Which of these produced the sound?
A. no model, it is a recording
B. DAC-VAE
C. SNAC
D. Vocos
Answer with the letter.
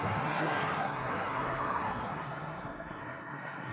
C